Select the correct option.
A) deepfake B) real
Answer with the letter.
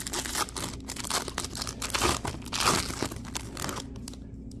B